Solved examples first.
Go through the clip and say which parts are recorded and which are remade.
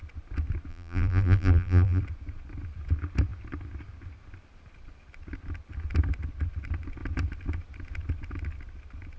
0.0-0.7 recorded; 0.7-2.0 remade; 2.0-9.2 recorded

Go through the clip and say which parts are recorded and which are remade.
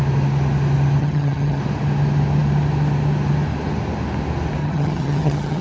0.0-1.0 recorded; 1.0-1.6 remade; 1.6-4.6 recorded; 4.6-5.6 remade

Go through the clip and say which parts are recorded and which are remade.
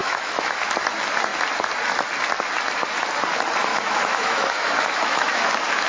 0.0-0.6 remade; 0.6-3.7 recorded; 3.7-5.5 remade; 5.5-5.9 recorded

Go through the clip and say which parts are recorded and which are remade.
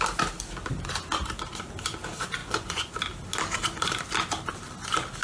0.0-2.4 recorded; 2.4-2.9 remade; 2.9-5.2 recorded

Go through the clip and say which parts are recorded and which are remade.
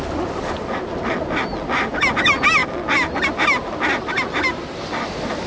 0.0-5.5 recorded